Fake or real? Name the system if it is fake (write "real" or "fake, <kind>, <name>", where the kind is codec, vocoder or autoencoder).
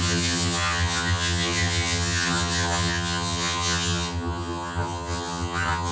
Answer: fake, vocoder, HiFi-GAN